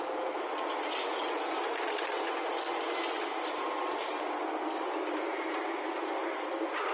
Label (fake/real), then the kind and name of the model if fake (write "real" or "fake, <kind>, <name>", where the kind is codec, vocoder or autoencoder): real